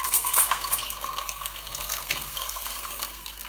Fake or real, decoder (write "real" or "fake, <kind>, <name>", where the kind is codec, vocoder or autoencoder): fake, codec, SNAC